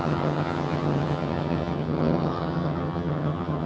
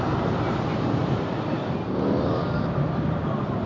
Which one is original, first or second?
second